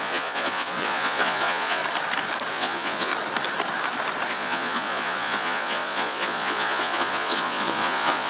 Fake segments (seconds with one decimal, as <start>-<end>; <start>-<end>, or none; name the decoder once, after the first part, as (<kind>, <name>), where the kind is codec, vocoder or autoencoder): 0.0-1.8 (vocoder, Vocos); 2.5-3.1; 4.3-8.3